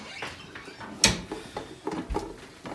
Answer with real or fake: real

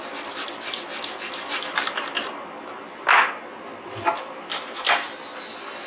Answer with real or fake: real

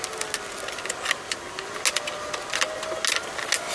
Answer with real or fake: real